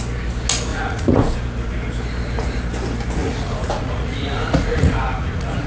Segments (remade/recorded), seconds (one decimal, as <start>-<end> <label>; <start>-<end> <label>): 0.0-0.7 recorded; 0.7-1.2 remade; 1.2-3.2 recorded; 3.2-5.7 remade